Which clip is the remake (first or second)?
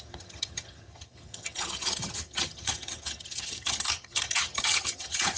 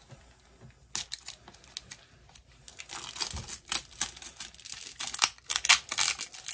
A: first